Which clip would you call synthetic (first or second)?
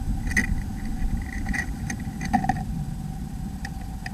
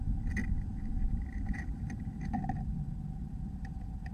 first